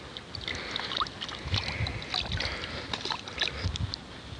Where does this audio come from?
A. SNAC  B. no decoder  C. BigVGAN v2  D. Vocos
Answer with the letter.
B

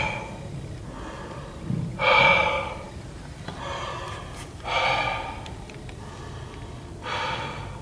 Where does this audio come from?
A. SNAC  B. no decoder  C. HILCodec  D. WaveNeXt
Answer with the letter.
B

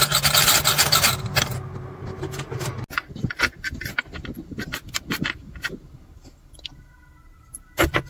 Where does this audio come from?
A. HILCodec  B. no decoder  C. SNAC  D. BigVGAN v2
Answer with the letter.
B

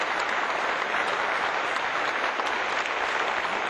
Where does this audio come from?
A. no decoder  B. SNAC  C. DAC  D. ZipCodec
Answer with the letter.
A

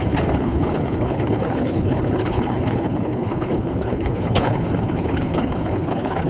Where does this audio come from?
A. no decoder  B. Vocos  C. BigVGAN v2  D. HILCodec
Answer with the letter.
D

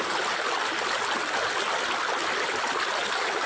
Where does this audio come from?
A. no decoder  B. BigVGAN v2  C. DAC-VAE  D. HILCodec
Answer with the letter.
A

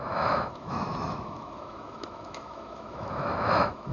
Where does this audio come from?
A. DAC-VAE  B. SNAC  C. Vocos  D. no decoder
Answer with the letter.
A